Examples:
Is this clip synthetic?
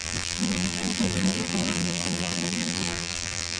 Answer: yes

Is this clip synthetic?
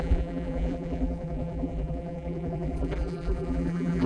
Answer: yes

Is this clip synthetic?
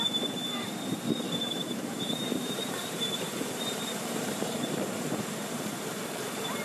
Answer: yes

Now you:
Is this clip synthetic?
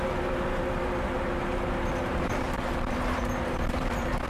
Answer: yes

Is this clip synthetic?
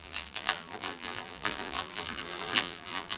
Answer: yes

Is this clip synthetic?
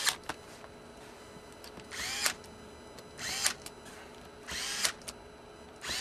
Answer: no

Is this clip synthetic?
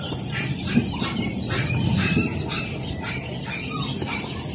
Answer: no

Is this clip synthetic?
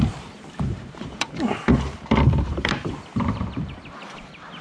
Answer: yes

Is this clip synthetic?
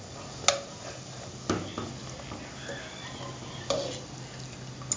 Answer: no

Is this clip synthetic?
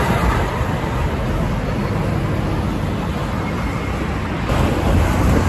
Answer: no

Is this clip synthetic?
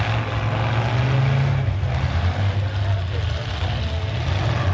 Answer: no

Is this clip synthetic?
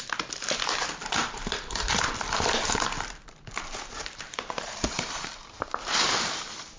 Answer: yes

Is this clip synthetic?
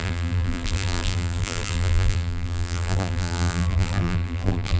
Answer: yes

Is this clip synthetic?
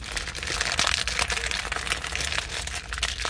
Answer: no